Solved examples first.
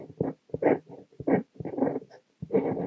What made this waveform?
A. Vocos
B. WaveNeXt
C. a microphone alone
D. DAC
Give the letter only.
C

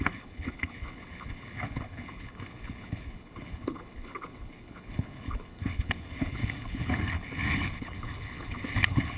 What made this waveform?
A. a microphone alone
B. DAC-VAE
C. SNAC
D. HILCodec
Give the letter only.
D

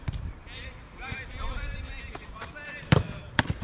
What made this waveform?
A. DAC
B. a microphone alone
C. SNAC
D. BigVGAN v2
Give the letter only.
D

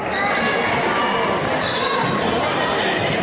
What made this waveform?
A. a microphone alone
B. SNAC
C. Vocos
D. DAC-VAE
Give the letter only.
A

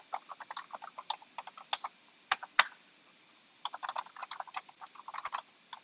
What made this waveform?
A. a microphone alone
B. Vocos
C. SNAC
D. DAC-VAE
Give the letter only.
A